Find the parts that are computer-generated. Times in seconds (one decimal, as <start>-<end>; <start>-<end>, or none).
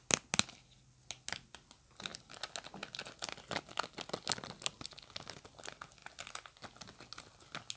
none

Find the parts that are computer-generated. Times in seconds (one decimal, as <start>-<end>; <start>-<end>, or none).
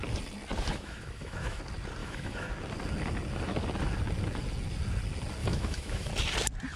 0.7-1.6; 2.0-2.5; 5.4-6.1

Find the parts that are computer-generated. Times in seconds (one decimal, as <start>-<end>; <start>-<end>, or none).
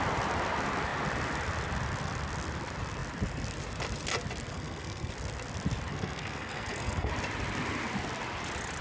4.5-5.1; 5.9-7.1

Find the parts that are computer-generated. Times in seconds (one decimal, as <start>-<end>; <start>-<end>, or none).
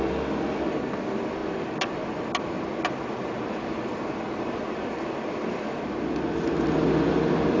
none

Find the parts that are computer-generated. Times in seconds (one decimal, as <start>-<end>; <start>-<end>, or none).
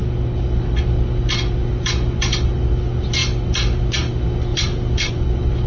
4.5-5.1